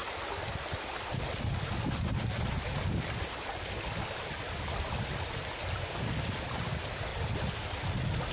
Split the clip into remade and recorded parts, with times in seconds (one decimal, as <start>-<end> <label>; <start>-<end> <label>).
0.0-8.3 recorded